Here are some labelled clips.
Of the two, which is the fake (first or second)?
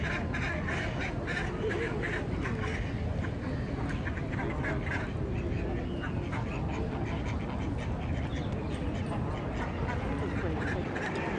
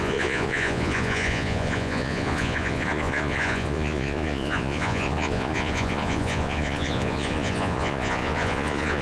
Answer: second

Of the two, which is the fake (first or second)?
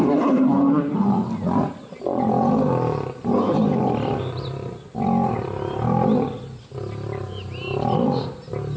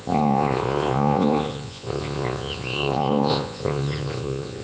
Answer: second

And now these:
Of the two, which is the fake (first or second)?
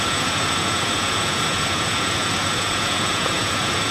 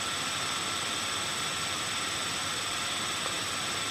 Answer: first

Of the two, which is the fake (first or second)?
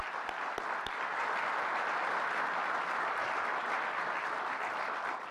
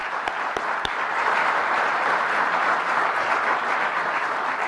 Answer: second